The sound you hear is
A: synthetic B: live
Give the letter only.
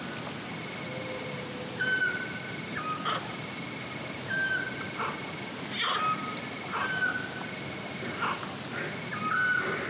B